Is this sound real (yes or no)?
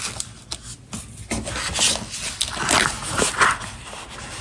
yes